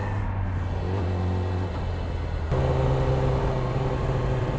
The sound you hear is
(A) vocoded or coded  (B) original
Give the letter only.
B